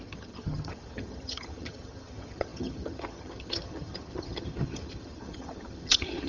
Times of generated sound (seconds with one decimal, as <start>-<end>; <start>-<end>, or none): 0.0-6.3